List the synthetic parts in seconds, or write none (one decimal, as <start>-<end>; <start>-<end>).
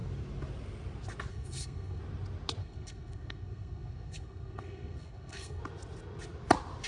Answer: 1.3-2.0; 2.6-5.6